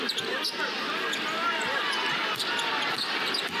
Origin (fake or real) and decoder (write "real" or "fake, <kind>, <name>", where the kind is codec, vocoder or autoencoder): real